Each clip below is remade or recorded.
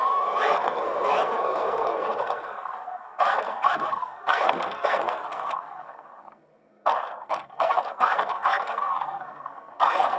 remade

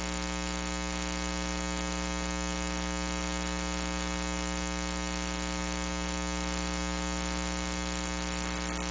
recorded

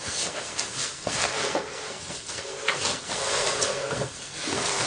remade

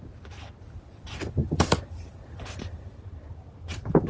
recorded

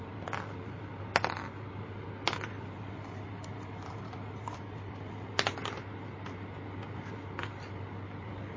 recorded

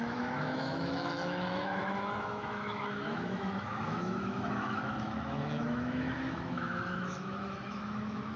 remade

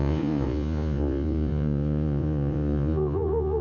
remade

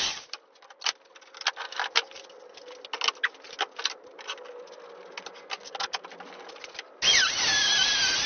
recorded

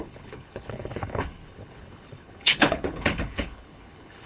remade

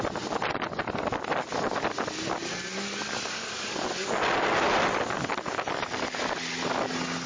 recorded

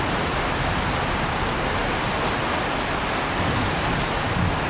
recorded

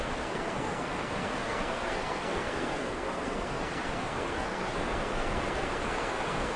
remade